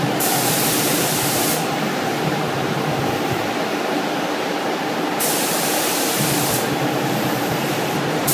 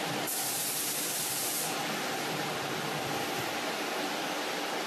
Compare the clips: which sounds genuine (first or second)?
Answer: second